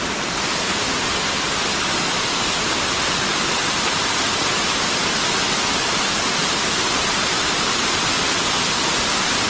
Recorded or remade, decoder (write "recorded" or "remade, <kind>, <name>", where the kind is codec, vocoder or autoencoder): recorded